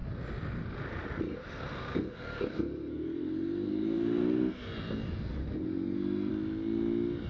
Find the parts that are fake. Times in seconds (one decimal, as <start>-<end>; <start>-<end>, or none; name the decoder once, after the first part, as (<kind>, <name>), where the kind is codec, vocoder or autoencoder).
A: 1.3-4.6 (codec, SNAC); 5.4-6.3